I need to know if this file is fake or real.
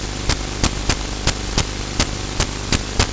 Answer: real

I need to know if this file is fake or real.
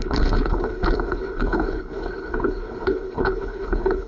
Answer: fake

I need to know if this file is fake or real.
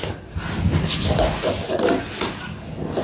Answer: real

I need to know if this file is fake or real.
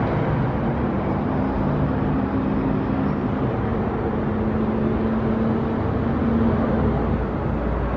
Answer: real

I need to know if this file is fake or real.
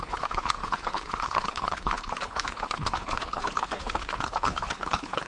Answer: fake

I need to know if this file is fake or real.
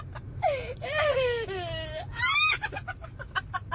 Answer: real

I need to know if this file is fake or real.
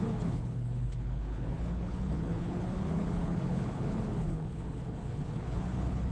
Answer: fake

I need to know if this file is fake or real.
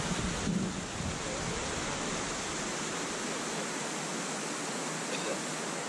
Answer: real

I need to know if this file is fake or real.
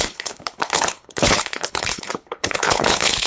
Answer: fake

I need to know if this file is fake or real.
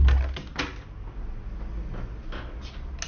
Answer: real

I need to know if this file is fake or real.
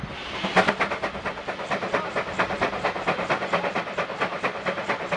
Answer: real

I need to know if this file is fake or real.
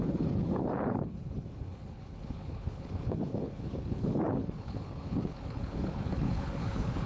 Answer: fake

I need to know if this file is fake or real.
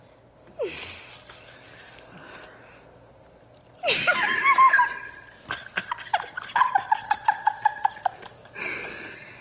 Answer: real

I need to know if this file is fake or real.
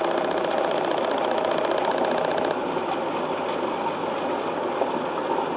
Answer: real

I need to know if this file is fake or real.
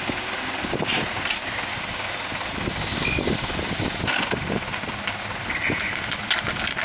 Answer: real